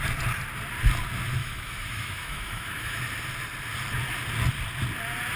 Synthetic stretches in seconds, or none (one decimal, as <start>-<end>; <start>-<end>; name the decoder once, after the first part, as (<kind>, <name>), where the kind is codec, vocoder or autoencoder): 1.4-3.0 (autoencoder, DAC-VAE)

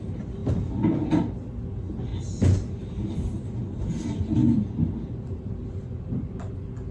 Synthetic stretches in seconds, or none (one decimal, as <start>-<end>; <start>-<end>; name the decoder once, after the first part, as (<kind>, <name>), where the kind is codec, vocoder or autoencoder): none

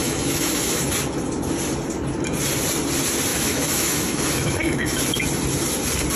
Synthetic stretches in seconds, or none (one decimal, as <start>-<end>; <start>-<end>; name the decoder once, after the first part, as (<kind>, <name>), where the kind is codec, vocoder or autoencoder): 0.0-0.8 (autoencoder, DAC-VAE); 3.3-5.0

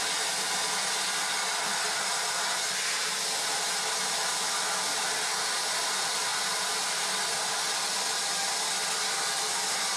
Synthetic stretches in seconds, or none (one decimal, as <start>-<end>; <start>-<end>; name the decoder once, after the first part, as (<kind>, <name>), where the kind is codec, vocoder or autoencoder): none

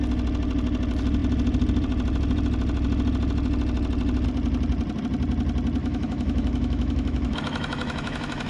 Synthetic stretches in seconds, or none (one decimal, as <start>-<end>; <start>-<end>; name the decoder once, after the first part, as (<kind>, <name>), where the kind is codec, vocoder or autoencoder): 5.8-8.5 (autoencoder, DAC-VAE)

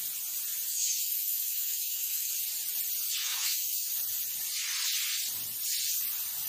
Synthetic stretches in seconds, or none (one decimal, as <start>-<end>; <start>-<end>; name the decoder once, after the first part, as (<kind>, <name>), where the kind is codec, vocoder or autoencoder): 0.7-2.3 (autoencoder, DAC-VAE); 3.2-3.9